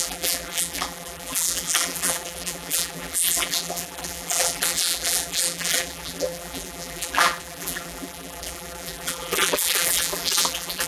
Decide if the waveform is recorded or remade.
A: remade